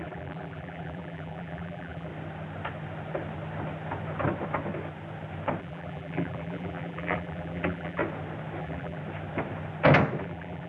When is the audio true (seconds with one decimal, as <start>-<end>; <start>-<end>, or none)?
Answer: 2.1-5.6; 8.0-8.6; 9.0-10.2